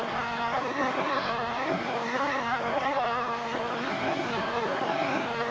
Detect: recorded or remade remade